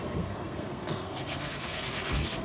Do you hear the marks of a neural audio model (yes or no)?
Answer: yes